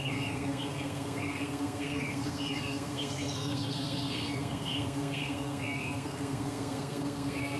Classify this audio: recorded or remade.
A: remade